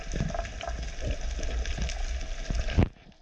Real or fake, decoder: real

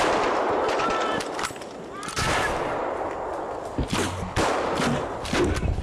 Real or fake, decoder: real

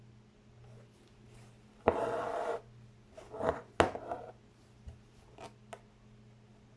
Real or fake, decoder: real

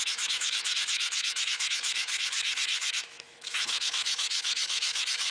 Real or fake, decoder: fake, autoencoder, DAC-VAE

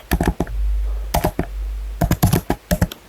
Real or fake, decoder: real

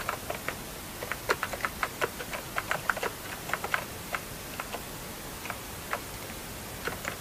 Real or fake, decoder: real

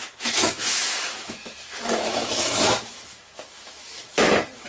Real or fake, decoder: fake, autoencoder, DAC-VAE